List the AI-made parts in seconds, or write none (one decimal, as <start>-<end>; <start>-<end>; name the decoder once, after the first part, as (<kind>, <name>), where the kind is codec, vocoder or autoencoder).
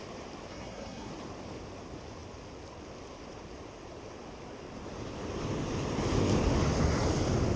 0.5-1.1 (codec, SNAC)